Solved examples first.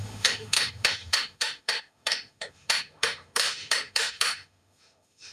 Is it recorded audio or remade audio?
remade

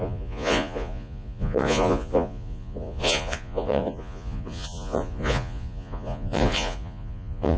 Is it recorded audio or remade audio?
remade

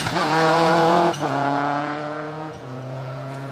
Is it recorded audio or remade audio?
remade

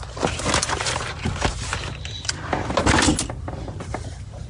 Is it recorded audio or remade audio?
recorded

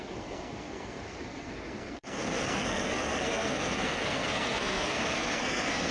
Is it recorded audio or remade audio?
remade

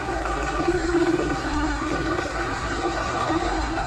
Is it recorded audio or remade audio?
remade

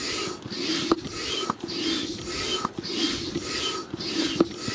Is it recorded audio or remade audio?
recorded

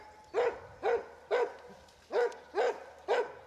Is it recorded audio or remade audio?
recorded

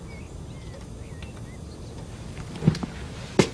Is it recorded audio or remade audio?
recorded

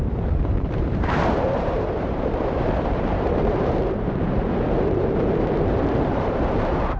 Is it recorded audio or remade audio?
remade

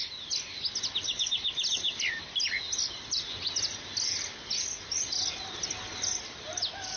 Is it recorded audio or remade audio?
recorded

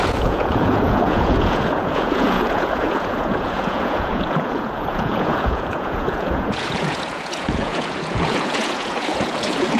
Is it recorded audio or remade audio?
remade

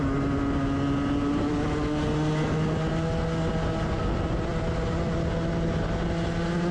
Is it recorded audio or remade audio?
recorded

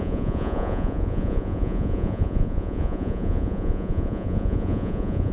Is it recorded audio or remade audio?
remade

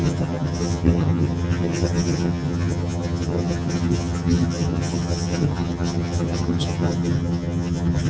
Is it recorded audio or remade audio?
remade